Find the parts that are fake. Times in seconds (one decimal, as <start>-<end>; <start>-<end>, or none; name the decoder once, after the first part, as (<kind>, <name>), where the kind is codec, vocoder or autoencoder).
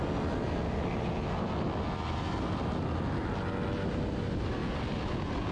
none